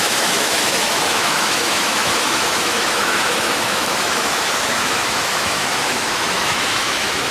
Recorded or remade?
remade